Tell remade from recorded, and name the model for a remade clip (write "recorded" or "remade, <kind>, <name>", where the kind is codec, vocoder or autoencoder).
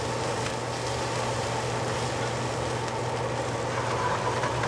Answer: recorded